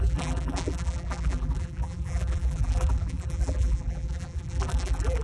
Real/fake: fake